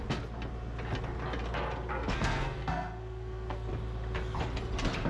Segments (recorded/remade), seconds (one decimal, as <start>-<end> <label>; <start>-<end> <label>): 0.0-1.9 recorded; 1.9-3.7 remade; 3.7-5.1 recorded